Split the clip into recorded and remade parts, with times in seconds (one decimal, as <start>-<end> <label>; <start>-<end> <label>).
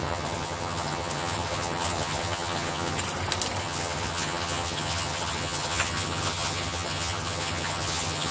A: 0.0-3.0 remade; 3.0-3.6 recorded; 3.6-8.3 remade